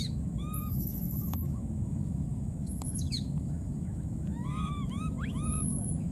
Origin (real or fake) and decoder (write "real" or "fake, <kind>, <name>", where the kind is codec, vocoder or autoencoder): fake, autoencoder, DAC-VAE